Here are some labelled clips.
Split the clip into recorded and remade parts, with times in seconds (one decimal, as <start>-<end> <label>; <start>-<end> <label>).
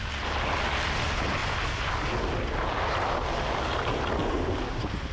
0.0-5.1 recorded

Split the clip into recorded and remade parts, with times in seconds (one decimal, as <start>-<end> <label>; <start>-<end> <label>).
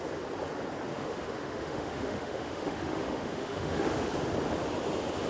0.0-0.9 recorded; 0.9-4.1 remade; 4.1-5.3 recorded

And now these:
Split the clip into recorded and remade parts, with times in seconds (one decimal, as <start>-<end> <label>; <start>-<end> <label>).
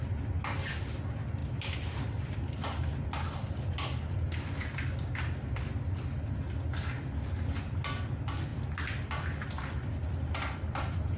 0.0-11.2 recorded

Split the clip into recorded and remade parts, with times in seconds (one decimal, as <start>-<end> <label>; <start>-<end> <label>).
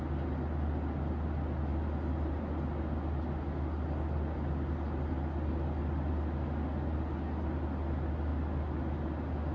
0.0-9.5 recorded